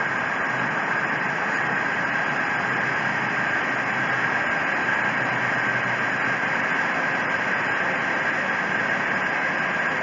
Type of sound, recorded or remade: recorded